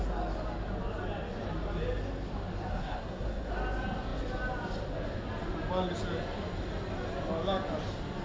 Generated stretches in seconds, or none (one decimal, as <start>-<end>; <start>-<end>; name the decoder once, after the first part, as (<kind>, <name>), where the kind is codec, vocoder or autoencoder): 2.7-3.5 (codec, SNAC)